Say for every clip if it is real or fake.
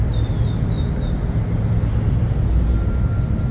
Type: real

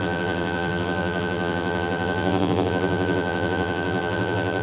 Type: fake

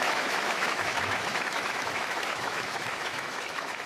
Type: fake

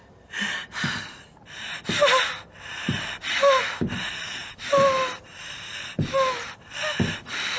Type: real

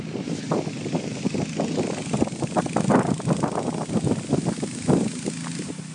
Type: real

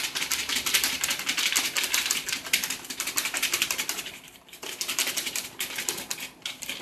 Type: fake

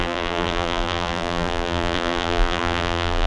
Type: fake